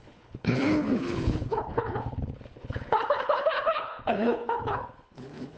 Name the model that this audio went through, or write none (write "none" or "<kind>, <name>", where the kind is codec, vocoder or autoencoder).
codec, HILCodec